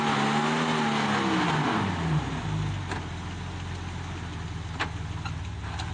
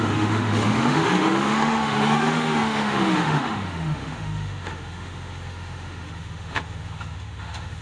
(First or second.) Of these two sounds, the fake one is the second